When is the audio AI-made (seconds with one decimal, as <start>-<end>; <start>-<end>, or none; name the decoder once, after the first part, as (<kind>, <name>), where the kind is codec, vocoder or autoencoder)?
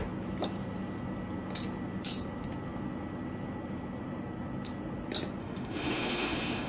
5.4-6.7 (autoencoder, DAC-VAE)